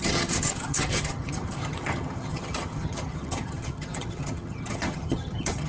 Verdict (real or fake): fake